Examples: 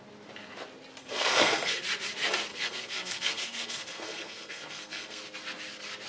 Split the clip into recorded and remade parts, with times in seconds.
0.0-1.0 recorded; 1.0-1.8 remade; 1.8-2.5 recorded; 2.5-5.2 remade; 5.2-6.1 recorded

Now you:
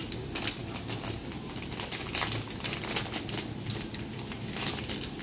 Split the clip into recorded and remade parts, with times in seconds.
0.0-5.2 recorded

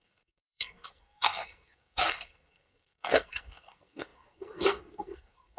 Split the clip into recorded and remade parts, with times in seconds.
0.0-5.6 remade

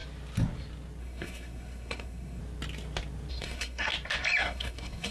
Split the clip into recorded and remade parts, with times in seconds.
0.0-1.0 recorded; 1.0-2.4 remade; 2.4-3.3 recorded; 3.3-3.9 remade; 3.9-4.4 recorded; 4.4-5.1 remade

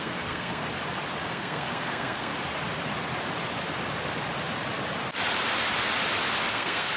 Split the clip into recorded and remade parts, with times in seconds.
0.0-0.6 remade; 0.6-1.3 recorded; 1.3-2.3 remade; 2.3-6.5 recorded; 6.5-7.0 remade

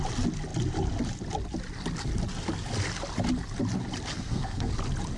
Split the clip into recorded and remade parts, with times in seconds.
0.0-4.1 recorded; 4.1-4.7 remade; 4.7-5.2 recorded